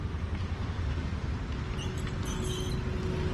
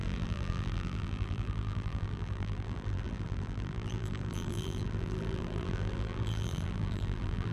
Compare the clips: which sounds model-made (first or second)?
second